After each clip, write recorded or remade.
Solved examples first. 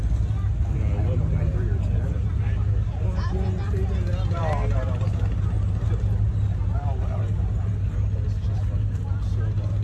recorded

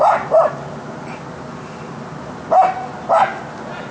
recorded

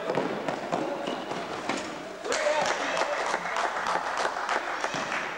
recorded